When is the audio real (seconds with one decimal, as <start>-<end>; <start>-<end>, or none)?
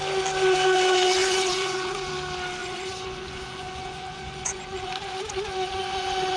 0.0-1.2; 2.1-2.6